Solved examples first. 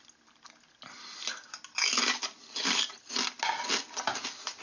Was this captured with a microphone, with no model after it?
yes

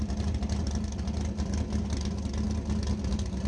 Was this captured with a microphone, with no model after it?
yes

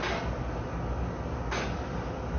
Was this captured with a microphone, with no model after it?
yes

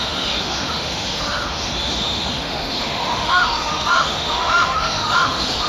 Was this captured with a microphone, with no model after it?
no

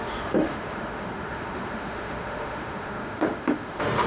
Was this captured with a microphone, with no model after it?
no